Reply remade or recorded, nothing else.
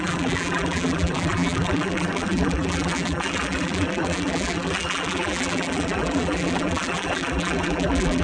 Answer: remade